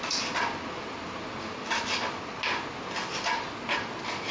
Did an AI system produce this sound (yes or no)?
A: no